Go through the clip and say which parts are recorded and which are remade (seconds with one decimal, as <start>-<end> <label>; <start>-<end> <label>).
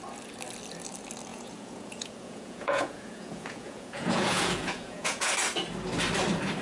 0.0-1.3 recorded; 1.3-5.3 remade; 5.3-6.6 recorded